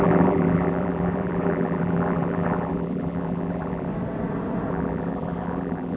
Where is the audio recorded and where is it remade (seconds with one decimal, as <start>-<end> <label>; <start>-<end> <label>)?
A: 0.0-3.9 remade; 3.9-4.7 recorded; 4.7-6.0 remade